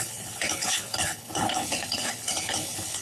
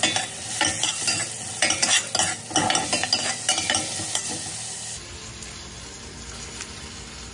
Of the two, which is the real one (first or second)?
second